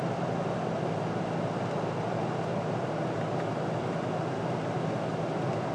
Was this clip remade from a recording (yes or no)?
no